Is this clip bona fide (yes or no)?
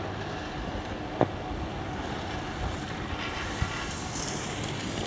yes